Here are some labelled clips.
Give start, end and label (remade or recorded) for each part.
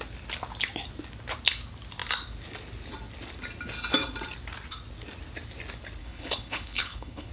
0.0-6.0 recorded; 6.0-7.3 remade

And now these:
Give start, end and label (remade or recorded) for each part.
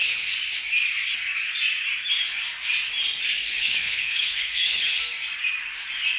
0.0-3.6 recorded; 3.6-5.0 remade; 5.0-6.2 recorded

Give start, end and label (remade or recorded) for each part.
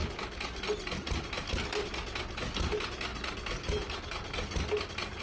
0.0-5.2 recorded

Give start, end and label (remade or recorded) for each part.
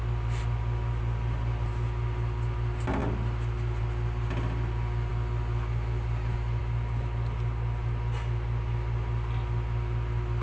0.0-10.4 recorded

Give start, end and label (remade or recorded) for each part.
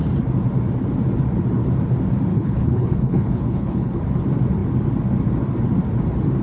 0.0-2.3 recorded; 2.3-4.0 remade; 4.0-6.4 recorded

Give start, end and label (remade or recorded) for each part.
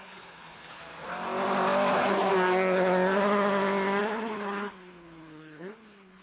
0.0-0.8 remade; 0.8-1.9 recorded; 1.9-2.3 remade; 2.3-4.0 recorded; 4.0-6.2 remade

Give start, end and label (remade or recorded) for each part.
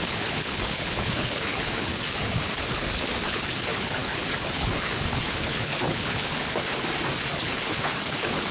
0.0-6.7 remade; 6.7-7.3 recorded; 7.3-8.5 remade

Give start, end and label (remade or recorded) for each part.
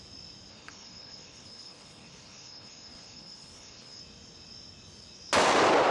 0.0-0.5 recorded; 0.5-4.0 remade; 4.0-5.9 recorded